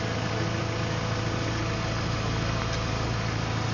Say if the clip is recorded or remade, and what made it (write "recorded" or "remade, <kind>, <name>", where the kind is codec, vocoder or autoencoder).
recorded